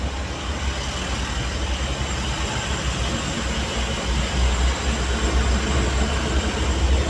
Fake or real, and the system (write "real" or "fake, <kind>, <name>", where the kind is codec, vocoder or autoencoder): real